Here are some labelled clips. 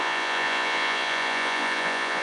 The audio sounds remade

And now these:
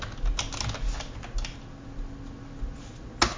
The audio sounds recorded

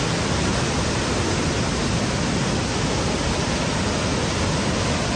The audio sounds recorded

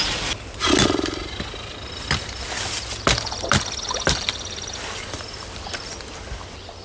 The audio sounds recorded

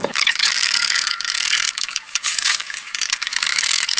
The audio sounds remade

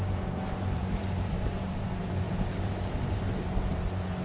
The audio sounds remade